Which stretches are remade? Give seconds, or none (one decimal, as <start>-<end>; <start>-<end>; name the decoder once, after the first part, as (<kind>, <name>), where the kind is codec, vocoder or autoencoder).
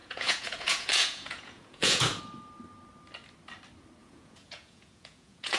0.0-2.2 (vocoder, Vocos); 4.0-5.6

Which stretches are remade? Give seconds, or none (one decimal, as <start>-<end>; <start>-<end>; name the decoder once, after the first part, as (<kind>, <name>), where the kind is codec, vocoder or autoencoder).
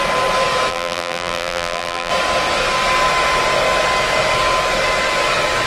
0.7-2.1 (vocoder, BigVGAN v2)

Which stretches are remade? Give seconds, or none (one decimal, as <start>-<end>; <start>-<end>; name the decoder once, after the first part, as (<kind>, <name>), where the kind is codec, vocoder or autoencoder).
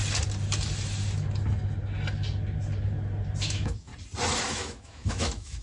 3.4-3.9 (autoencoder, DAC-VAE); 4.5-5.6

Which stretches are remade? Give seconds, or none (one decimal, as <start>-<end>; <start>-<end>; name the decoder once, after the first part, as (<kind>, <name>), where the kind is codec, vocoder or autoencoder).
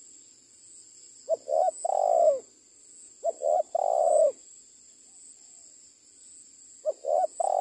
none